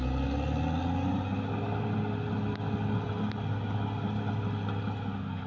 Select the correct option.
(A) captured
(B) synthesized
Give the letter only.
A